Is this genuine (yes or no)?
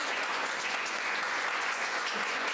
no